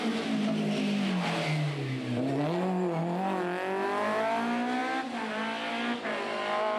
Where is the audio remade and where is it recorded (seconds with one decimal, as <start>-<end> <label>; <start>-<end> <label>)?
0.0-6.8 recorded